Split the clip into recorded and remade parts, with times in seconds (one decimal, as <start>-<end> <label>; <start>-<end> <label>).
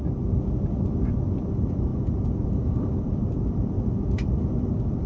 0.0-1.3 recorded; 1.3-5.1 remade